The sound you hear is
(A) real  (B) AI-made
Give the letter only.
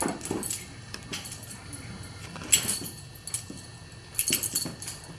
A